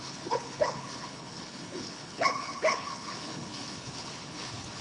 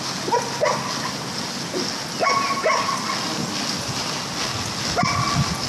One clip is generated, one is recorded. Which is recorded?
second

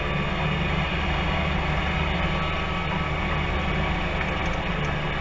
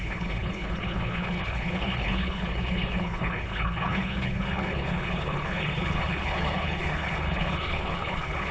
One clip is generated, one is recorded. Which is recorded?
first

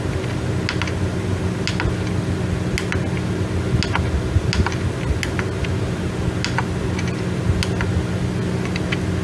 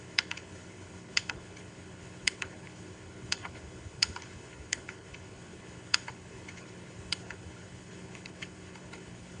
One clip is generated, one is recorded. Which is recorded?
first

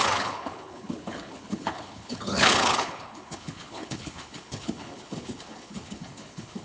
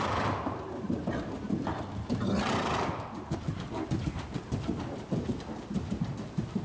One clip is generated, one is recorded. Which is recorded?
second